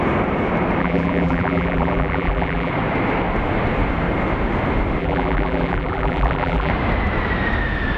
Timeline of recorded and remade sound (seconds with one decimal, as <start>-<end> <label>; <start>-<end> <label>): 0.0-0.8 recorded; 0.8-2.7 remade; 2.7-5.0 recorded; 5.0-6.7 remade; 6.7-8.0 recorded